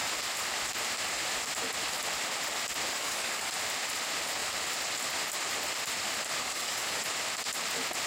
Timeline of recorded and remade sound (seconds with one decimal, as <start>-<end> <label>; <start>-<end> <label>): 0.0-2.9 recorded; 2.9-3.5 remade; 3.5-6.4 recorded; 6.4-7.0 remade; 7.0-8.1 recorded